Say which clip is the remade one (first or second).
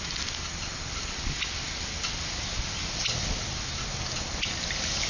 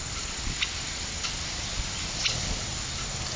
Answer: second